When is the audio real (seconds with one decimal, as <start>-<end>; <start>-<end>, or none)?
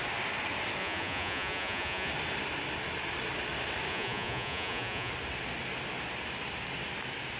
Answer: 0.0-0.8; 2.1-3.9; 5.1-7.4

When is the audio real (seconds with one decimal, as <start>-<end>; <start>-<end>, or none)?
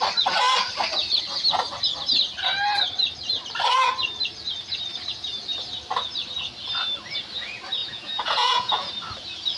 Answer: 0.0-7.8; 8.9-9.6